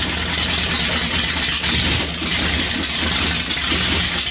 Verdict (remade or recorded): recorded